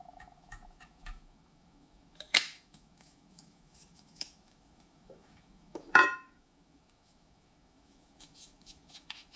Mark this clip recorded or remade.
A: remade